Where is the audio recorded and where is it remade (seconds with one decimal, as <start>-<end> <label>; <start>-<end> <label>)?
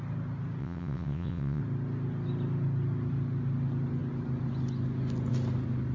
0.0-0.6 recorded; 0.6-1.6 remade; 1.6-5.9 recorded